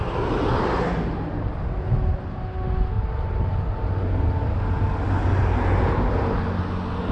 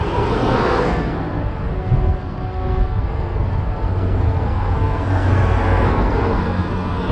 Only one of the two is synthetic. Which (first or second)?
second